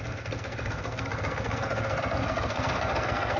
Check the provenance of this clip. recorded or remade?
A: remade